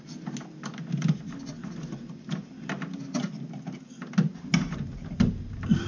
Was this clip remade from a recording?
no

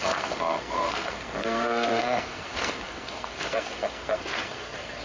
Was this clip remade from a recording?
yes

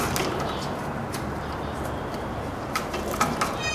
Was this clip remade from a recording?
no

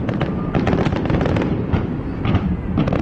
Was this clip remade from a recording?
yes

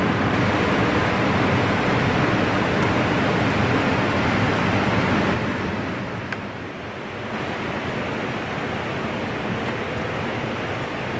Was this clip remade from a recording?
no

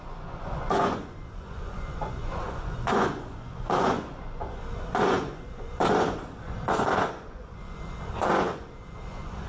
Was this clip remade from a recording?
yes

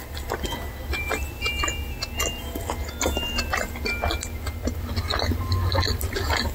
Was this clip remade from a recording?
no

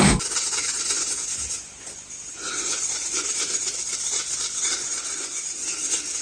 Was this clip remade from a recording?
no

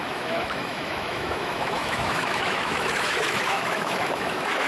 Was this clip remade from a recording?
yes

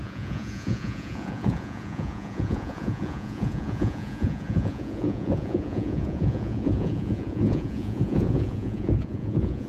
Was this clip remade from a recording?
yes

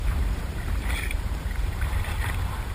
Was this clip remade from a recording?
yes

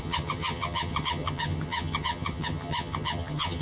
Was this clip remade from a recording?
yes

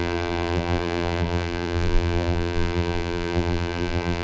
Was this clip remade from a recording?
yes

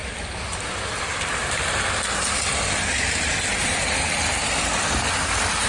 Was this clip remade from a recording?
no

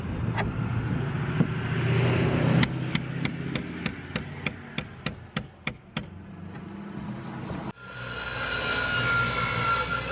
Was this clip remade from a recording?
no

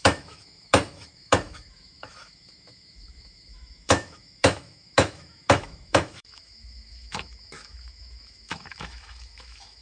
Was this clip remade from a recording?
yes